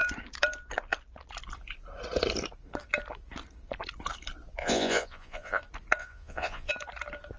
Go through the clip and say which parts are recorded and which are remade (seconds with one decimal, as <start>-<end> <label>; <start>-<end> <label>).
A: 0.0-4.6 recorded; 4.6-5.6 remade; 5.6-6.0 recorded; 6.0-6.7 remade; 6.7-7.4 recorded